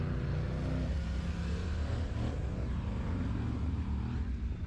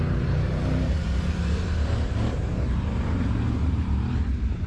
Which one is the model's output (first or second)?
second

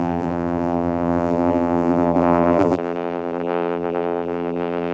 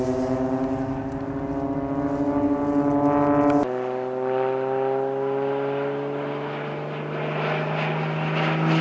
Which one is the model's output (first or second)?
first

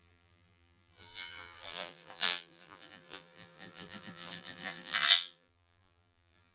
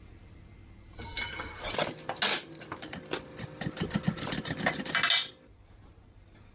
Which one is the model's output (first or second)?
first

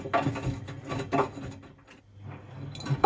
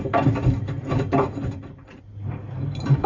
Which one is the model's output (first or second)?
second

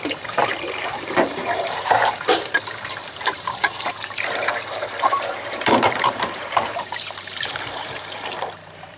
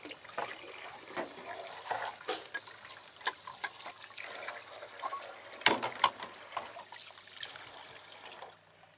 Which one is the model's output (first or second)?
first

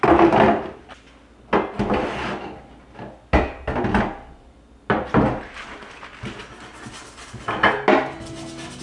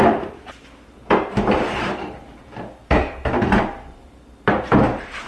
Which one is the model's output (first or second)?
second